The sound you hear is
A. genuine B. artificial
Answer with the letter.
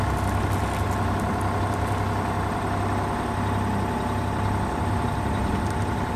A